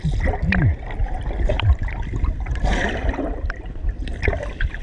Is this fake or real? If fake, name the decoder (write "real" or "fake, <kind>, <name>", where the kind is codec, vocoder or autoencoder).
real